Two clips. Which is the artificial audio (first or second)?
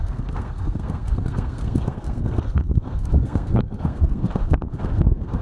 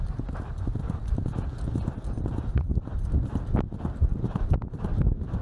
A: first